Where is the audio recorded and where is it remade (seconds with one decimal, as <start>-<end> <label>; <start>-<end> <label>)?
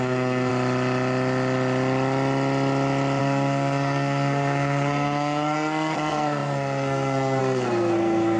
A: 0.0-0.5 remade; 0.5-3.2 recorded; 3.2-8.4 remade